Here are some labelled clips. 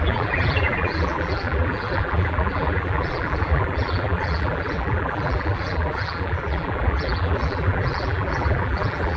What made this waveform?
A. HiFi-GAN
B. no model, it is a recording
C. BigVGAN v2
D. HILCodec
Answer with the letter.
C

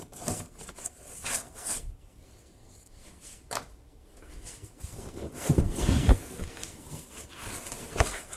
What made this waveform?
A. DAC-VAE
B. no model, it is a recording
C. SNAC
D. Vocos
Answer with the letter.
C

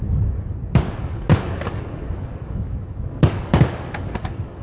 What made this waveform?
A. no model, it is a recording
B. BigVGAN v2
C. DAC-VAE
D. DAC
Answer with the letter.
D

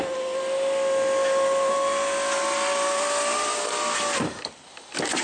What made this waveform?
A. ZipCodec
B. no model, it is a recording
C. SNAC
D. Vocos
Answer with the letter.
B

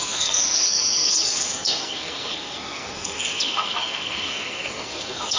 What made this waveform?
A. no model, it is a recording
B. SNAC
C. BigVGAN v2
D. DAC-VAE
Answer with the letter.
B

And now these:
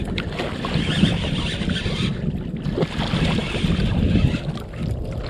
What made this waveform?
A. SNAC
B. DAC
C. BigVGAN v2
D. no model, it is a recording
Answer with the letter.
D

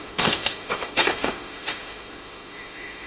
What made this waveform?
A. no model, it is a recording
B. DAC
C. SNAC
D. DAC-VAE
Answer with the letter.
D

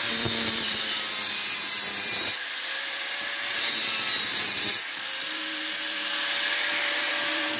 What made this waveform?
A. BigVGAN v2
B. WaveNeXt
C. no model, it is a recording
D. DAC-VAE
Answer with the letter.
A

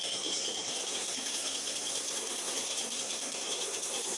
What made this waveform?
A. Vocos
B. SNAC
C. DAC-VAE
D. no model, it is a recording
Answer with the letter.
B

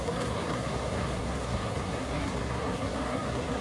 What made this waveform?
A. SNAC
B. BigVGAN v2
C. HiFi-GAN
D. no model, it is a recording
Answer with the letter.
A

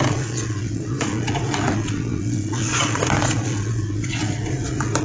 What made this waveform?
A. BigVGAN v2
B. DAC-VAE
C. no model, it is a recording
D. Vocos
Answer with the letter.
D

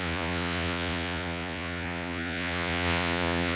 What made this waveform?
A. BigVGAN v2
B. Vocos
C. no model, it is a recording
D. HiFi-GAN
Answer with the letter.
B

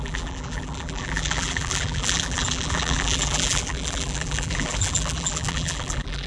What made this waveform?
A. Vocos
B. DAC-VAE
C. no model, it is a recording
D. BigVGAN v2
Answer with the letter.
D